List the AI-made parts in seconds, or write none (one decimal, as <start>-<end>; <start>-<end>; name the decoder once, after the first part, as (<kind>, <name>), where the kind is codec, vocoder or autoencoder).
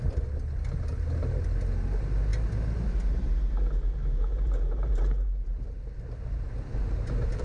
none